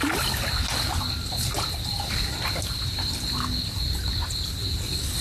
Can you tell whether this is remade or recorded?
recorded